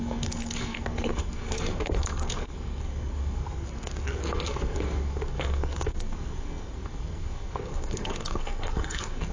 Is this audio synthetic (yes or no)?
yes